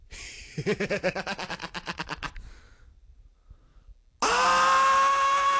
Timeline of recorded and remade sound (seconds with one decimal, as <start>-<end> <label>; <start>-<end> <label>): 0.0-3.7 remade; 3.7-5.1 recorded; 5.1-5.6 remade